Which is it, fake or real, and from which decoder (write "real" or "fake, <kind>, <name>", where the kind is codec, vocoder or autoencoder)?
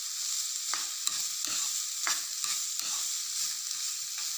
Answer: real